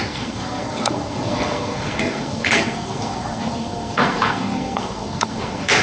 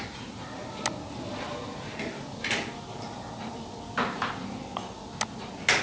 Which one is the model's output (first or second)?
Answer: first